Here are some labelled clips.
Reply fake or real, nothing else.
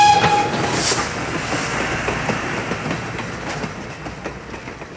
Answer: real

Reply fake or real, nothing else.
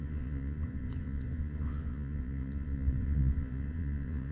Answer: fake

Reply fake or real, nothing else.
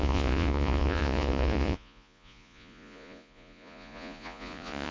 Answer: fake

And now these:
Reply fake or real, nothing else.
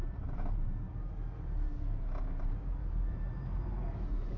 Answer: fake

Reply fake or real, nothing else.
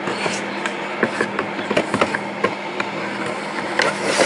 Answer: real